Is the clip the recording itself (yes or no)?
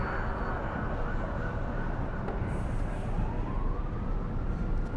yes